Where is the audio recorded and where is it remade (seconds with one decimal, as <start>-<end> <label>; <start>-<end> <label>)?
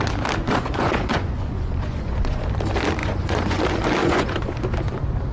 0.0-0.4 recorded; 0.4-2.4 remade; 2.4-3.0 recorded; 3.0-3.6 remade; 3.6-4.0 recorded; 4.0-4.6 remade; 4.6-5.3 recorded